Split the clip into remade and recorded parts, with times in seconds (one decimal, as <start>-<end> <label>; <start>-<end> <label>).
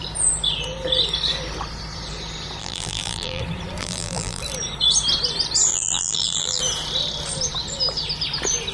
0.0-2.6 recorded; 2.6-3.4 remade; 3.4-3.8 recorded; 3.8-4.4 remade; 4.4-5.7 recorded; 5.7-6.6 remade; 6.6-8.7 recorded